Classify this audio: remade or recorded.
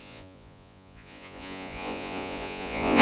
remade